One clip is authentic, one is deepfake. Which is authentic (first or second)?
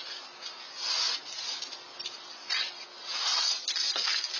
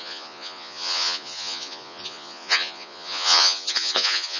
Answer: first